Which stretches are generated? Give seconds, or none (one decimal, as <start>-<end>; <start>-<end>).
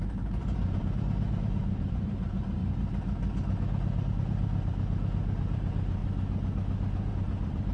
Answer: 0.0-2.6; 4.1-6.0; 7.1-7.7